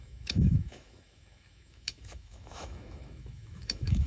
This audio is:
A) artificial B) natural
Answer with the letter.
A